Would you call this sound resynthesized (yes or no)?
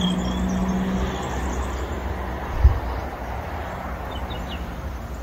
no